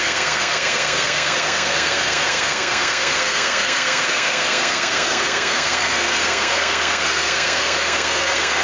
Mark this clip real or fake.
fake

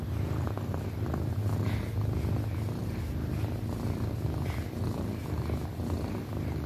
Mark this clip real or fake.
real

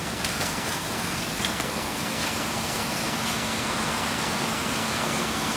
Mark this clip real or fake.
fake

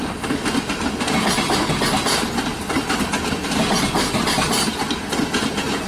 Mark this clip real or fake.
real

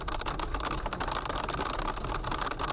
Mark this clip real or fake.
real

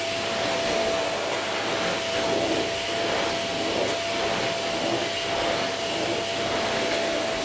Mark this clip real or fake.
real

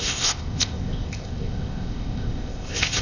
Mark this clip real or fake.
fake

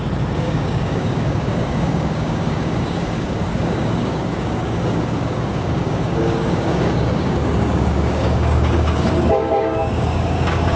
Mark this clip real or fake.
fake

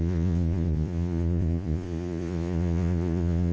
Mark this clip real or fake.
fake